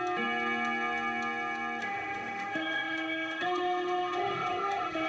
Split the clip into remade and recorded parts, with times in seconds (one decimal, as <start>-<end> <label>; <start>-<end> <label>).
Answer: 0.0-1.8 recorded; 1.8-5.1 remade